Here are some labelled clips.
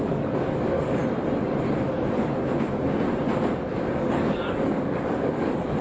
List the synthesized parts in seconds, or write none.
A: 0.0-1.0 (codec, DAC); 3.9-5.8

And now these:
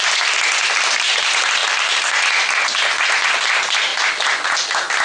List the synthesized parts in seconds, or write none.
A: 1.6-2.2 (vocoder, BigVGAN v2)

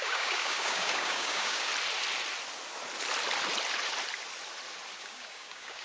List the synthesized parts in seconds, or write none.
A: 0.0-1.7 (codec, DAC); 5.0-5.8